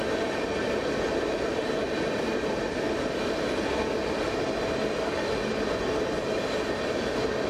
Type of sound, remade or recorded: recorded